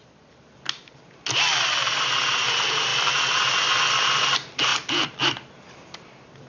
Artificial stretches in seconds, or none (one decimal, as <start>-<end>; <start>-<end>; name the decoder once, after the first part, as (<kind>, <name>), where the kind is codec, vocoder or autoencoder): none